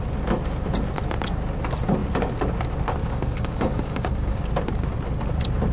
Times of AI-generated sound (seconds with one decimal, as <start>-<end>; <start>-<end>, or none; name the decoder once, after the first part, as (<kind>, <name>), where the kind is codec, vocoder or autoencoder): 3.0-4.4 (codec, DAC)